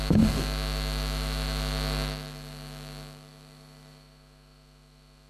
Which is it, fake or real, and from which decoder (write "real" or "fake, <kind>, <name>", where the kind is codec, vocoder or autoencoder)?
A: fake, autoencoder, DAC-VAE